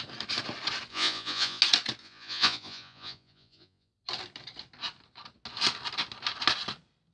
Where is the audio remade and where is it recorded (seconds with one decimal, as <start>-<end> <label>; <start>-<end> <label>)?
0.0-0.9 recorded; 0.9-1.6 remade; 1.6-2.0 recorded; 2.0-3.9 remade; 3.9-7.1 recorded